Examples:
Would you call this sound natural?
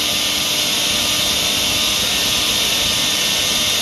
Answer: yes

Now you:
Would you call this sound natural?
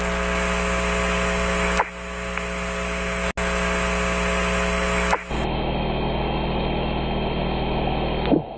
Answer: yes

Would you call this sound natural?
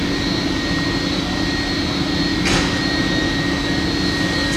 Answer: yes